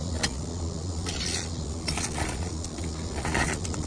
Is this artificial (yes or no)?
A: yes